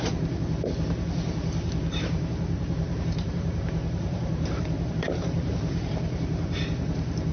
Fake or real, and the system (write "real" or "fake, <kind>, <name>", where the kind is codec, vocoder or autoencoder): fake, vocoder, BigVGAN v2